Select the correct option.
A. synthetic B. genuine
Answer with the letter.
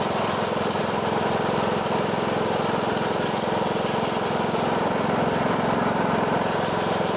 B